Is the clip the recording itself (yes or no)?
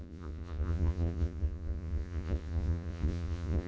no